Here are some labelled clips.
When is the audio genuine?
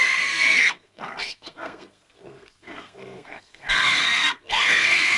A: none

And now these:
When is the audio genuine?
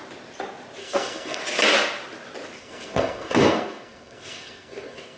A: 0.0-0.8; 1.4-2.6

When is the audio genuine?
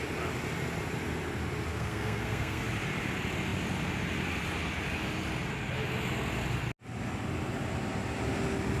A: 0.0-1.7; 2.6-8.8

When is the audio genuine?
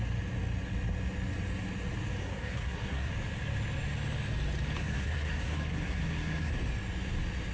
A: 0.0-2.2; 3.1-4.8; 6.5-7.5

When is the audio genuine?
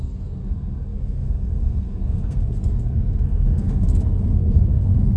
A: none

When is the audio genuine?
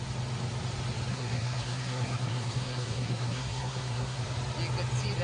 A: 0.0-1.1; 4.2-5.2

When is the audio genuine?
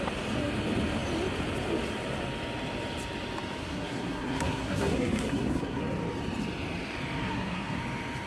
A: 0.0-3.6; 5.8-7.2; 7.8-8.3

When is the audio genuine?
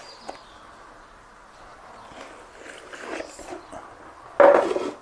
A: 0.0-5.0